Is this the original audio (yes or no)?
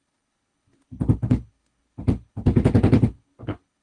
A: no